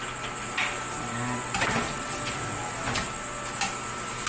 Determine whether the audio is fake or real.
real